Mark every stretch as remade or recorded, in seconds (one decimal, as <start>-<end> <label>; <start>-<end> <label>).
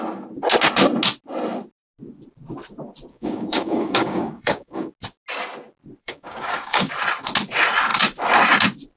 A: 0.0-3.1 recorded; 3.1-4.9 remade; 4.9-6.0 recorded; 6.0-6.9 remade; 6.9-9.0 recorded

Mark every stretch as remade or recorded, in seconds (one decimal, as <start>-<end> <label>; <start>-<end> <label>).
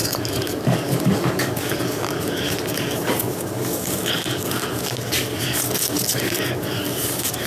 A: 0.0-7.5 remade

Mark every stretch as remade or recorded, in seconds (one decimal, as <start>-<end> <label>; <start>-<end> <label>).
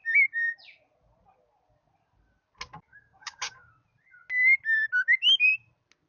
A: 0.0-2.9 recorded; 2.9-3.7 remade; 3.7-6.1 recorded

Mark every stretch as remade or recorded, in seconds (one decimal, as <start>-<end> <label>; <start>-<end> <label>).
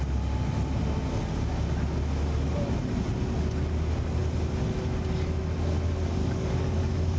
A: 0.0-6.2 recorded; 6.2-7.2 remade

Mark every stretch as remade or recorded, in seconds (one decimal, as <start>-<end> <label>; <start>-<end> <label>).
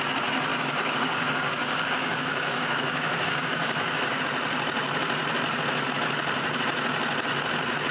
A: 0.0-0.5 recorded; 0.5-4.2 remade; 4.2-7.9 recorded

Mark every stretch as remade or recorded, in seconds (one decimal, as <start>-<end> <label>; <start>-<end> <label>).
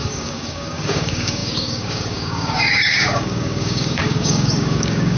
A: 0.0-5.2 remade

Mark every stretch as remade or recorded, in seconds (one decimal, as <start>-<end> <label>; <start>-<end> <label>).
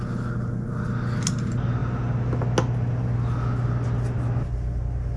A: 0.0-5.2 recorded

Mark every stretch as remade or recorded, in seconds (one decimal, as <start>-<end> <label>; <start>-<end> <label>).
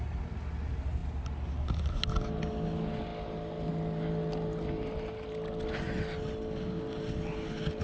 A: 0.0-7.8 recorded